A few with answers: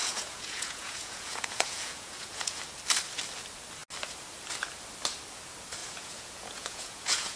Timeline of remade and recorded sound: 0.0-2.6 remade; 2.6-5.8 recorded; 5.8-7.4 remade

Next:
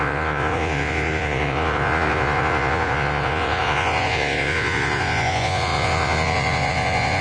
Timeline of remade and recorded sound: 0.0-7.2 remade

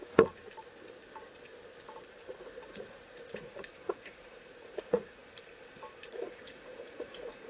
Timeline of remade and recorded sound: 0.0-0.4 remade; 0.4-2.1 recorded; 2.1-5.2 remade; 5.2-6.1 recorded; 6.1-7.5 remade

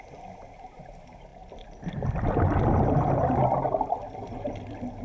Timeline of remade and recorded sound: 0.0-5.0 recorded

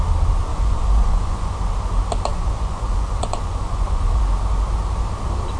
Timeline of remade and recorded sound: 0.0-0.5 recorded; 0.5-1.5 remade; 1.5-2.3 recorded; 2.3-4.2 remade; 4.2-5.6 recorded

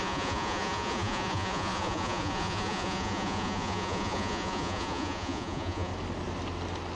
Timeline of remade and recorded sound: 0.0-5.9 remade; 5.9-7.0 recorded